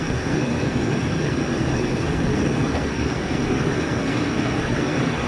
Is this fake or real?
fake